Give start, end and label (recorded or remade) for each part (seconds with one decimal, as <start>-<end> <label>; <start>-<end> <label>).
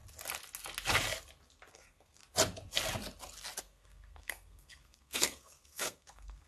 0.0-1.7 recorded; 1.7-2.2 remade; 2.2-3.6 recorded; 3.6-6.5 remade